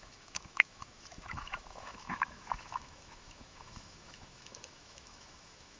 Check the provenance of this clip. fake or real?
fake